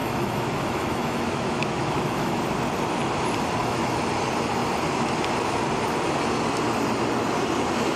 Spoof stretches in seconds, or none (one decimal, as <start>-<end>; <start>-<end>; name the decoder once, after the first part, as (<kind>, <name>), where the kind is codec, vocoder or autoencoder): 0.0-2.4 (autoencoder, DAC-VAE); 3.6-4.1